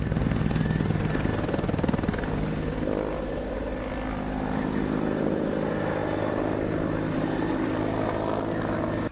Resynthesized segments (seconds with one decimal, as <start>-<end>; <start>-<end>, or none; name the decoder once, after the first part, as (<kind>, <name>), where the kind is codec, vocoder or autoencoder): none